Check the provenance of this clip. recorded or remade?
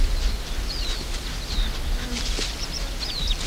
recorded